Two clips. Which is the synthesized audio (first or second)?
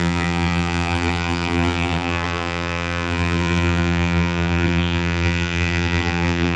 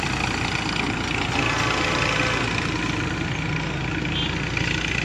first